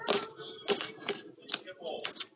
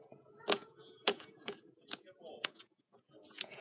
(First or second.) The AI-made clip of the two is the second